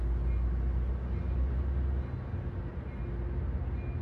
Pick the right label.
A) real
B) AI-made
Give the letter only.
A